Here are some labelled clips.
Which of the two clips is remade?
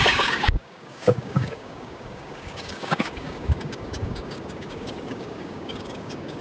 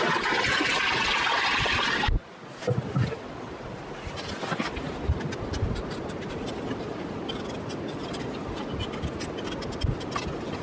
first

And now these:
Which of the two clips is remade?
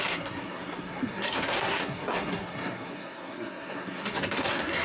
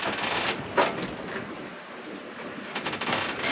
first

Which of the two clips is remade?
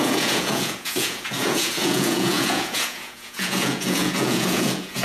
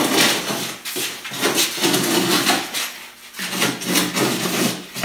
first